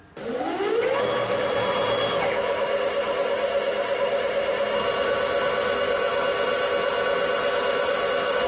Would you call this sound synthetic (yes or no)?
no